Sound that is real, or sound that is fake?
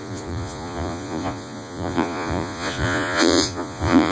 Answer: fake